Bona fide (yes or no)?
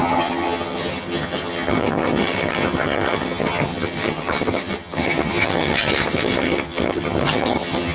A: no